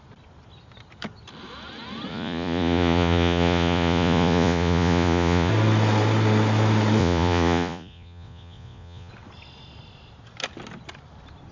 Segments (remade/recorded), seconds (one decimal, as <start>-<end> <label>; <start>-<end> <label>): 0.0-2.1 recorded; 2.1-5.5 remade; 5.5-7.0 recorded; 7.0-9.1 remade; 9.1-11.5 recorded